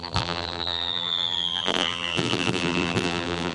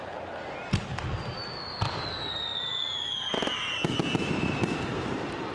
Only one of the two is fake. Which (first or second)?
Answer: first